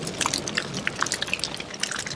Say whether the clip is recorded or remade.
recorded